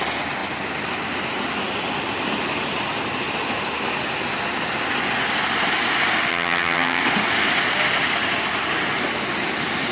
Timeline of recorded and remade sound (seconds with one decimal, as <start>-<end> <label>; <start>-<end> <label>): 0.0-6.3 recorded; 6.3-7.0 remade; 7.0-9.9 recorded